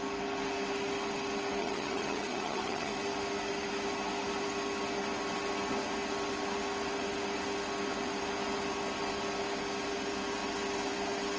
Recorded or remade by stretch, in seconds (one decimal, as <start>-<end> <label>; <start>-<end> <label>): 0.0-1.6 recorded; 1.6-2.9 remade; 2.9-11.4 recorded

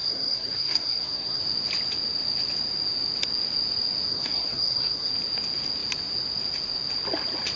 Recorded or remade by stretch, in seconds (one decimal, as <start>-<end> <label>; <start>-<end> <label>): 0.0-1.4 remade; 1.4-4.1 recorded; 4.1-5.1 remade; 5.1-7.6 recorded

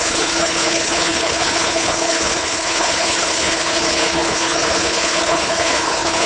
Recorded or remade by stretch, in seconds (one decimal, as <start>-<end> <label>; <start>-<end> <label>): 0.0-6.3 remade